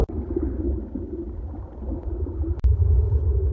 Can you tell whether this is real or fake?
real